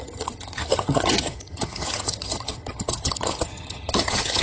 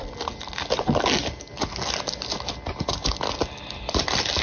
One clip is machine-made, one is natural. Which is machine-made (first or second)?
first